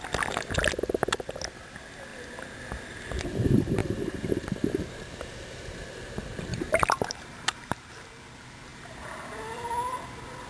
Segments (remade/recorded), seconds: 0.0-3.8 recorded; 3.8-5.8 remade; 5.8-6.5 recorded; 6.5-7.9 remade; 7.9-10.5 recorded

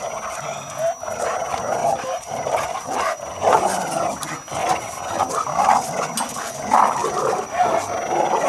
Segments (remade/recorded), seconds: 0.0-1.8 recorded; 1.8-3.4 remade; 3.4-7.0 recorded; 7.0-7.8 remade; 7.8-8.5 recorded

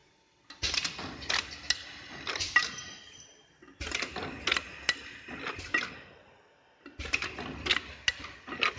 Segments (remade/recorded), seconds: 0.0-8.8 recorded

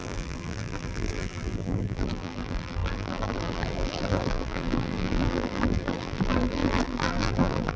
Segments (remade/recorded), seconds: 0.0-7.8 remade

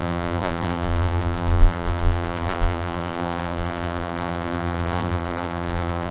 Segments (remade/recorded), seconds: 0.0-6.1 remade